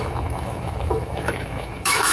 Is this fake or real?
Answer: fake